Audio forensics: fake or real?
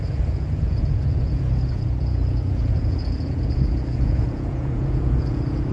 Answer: fake